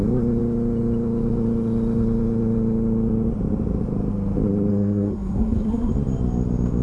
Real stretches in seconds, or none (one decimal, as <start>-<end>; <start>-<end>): 0.0-4.7; 5.9-6.8